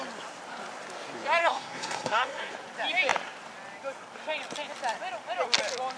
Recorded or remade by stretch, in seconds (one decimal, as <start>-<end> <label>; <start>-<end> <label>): 0.0-1.4 recorded; 1.4-2.5 remade; 2.5-6.0 recorded